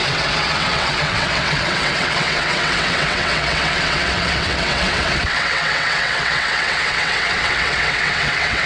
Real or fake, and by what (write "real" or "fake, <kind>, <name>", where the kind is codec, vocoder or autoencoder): fake, vocoder, WaveNeXt